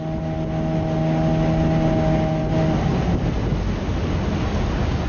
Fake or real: real